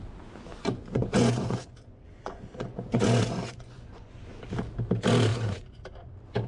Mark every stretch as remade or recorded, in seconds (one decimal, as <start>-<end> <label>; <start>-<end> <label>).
0.0-0.5 recorded; 0.5-4.4 remade; 4.4-5.3 recorded; 5.3-5.8 remade; 5.8-6.5 recorded